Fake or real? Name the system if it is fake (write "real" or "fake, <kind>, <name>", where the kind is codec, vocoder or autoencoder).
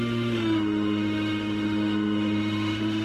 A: fake, autoencoder, DAC-VAE